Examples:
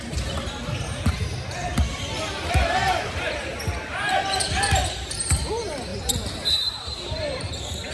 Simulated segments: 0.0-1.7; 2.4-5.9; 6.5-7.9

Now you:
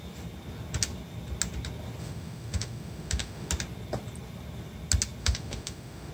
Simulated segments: 2.0-3.5; 5.2-6.1

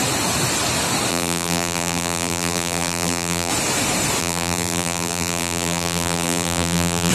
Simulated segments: 1.1-3.5; 4.2-7.1

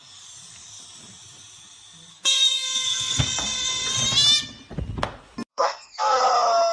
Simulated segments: 2.1-3.2; 5.5-6.2